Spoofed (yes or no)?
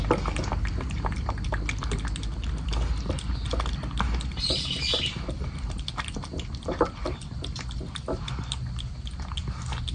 no